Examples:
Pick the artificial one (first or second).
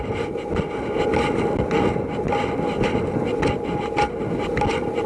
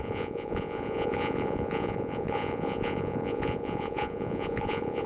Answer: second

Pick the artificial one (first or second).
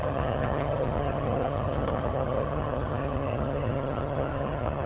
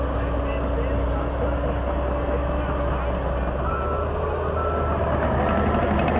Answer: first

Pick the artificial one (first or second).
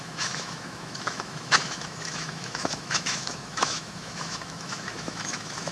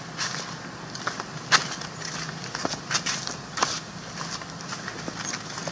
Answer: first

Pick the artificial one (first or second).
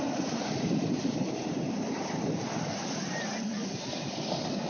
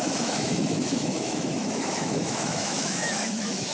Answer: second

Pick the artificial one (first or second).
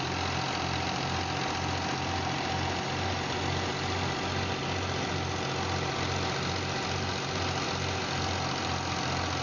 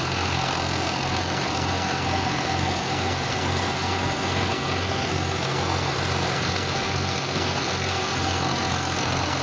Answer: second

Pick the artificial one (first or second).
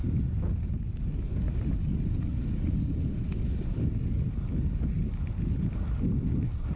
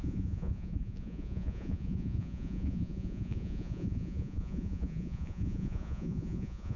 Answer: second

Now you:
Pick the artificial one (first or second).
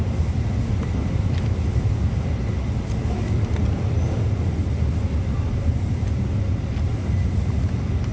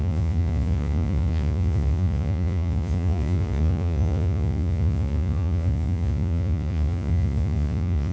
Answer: second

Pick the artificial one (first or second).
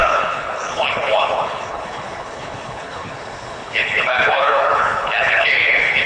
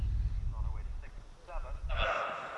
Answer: first